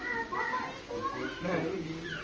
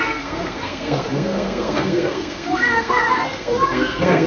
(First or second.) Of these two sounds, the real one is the first